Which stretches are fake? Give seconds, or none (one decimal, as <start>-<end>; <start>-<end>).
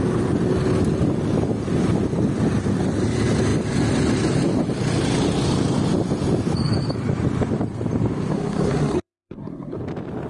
8.3-9.8